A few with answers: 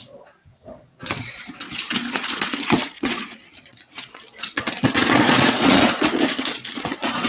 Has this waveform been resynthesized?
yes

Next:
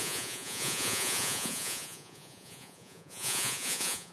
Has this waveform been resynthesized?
yes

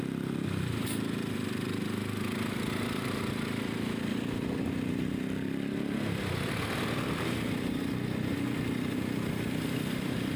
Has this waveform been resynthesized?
no